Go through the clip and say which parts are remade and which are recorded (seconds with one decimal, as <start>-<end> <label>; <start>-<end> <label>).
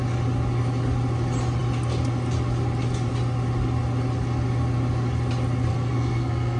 0.0-5.7 recorded; 5.7-6.6 remade